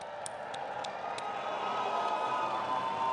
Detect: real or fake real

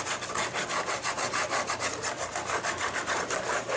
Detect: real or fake real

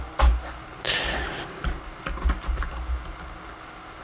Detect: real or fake real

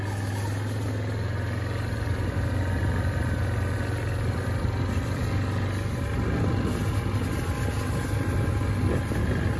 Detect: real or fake real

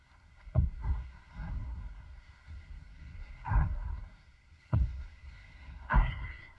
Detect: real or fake fake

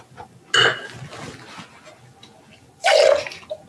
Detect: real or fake real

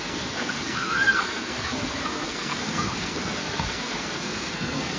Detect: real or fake fake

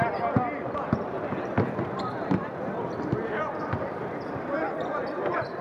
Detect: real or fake real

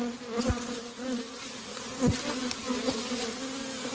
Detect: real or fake real